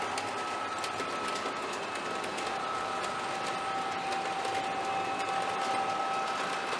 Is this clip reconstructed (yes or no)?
no